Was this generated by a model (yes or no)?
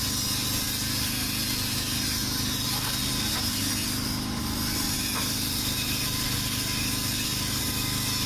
no